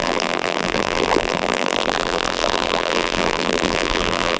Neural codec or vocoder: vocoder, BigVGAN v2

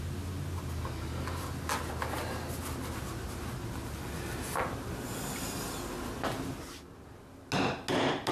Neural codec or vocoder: none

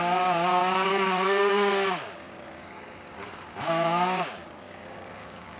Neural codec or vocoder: codec, DAC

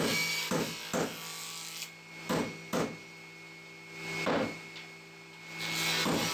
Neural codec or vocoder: none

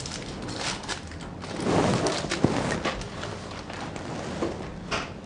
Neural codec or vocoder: none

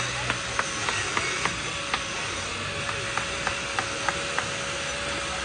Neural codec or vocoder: none